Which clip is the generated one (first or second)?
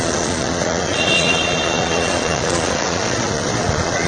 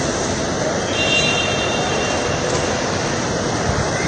first